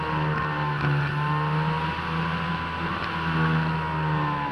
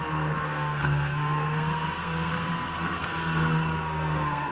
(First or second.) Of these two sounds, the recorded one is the first